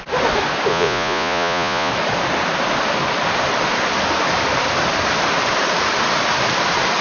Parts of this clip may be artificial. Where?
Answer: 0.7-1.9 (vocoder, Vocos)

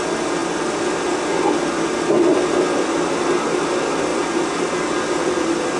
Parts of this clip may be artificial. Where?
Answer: none

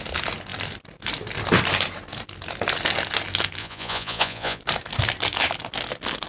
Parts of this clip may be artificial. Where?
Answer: 3.6-4.6 (vocoder, Vocos)

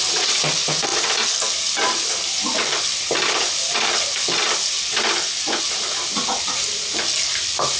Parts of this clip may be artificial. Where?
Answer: none

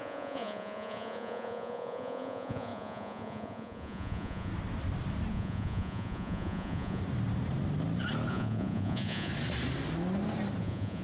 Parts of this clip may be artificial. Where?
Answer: 0.0-4.5 (vocoder, Vocos); 5.3-7.0; 8.3-9.3; 10.6-11.0

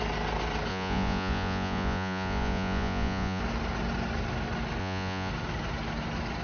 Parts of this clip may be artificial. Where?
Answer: 0.7-3.4 (vocoder, Vocos); 4.8-5.3

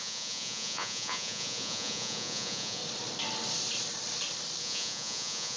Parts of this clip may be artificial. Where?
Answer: 0.0-2.8 (vocoder, Vocos); 4.6-5.6